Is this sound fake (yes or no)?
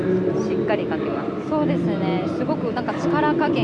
no